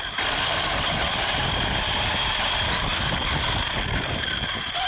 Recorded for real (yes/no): yes